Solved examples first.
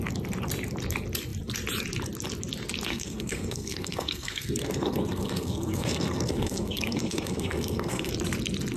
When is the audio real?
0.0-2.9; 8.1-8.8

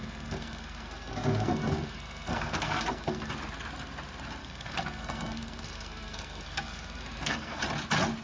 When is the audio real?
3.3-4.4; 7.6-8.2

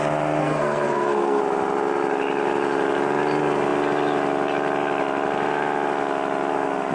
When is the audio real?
0.0-0.4; 1.4-6.9

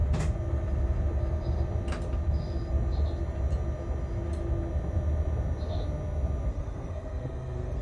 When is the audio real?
0.0-6.5

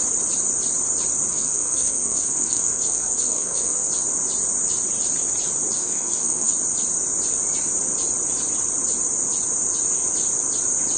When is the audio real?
0.0-1.3; 3.9-5.8; 6.5-11.0

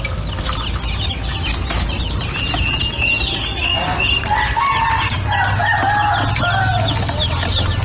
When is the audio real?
0.0-7.8

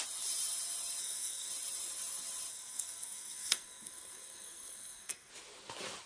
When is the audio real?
0.0-1.0; 1.5-2.5; 5.3-6.1

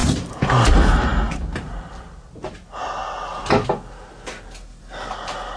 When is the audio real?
0.0-5.6